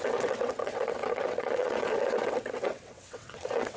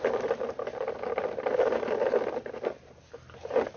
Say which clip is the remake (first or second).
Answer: first